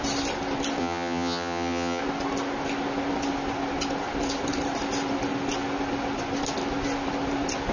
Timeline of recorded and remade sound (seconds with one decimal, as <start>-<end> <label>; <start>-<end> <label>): 0.0-0.8 recorded; 0.8-2.0 remade; 2.0-7.7 recorded